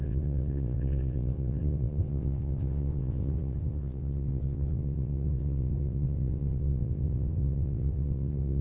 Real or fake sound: fake